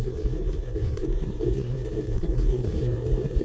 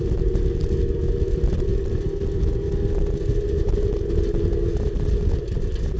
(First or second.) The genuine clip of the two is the second